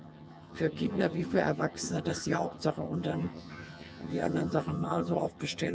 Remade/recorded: remade